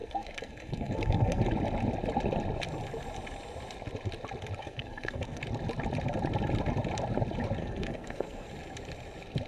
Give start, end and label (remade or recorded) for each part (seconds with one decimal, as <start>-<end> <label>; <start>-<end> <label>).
0.0-1.4 remade; 1.4-4.6 recorded; 4.6-5.4 remade; 5.4-7.6 recorded; 7.6-8.5 remade; 8.5-9.5 recorded